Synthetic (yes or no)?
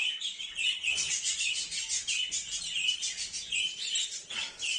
no